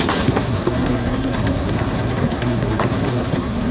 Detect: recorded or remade remade